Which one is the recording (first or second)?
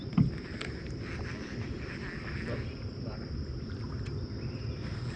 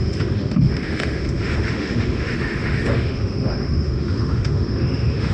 first